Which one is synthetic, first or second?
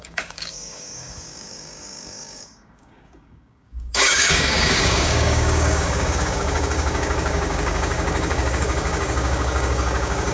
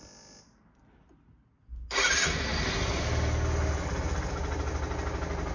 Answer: first